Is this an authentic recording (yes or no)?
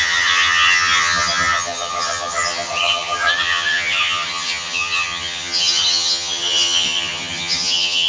no